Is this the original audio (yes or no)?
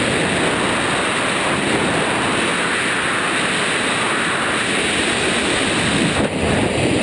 yes